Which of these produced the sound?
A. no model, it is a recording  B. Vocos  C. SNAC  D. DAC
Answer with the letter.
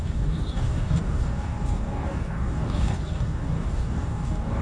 D